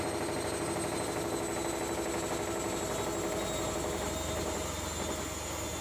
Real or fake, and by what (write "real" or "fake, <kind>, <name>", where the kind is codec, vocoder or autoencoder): real